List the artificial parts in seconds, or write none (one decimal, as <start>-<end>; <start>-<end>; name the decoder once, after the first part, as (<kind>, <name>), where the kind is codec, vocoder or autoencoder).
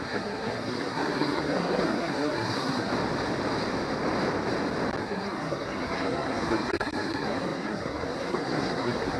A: 0.0-2.9 (codec, SNAC); 5.0-9.2